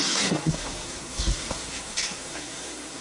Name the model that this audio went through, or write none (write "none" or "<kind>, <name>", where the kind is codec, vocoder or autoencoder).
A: codec, SNAC